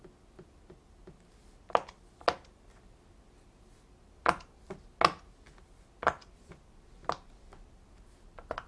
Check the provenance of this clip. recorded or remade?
recorded